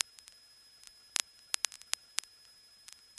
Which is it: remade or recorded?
recorded